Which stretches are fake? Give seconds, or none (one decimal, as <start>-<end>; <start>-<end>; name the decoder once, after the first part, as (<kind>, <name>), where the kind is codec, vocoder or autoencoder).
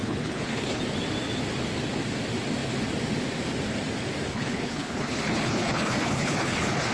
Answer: 0.0-0.8 (codec, HILCodec); 4.3-6.9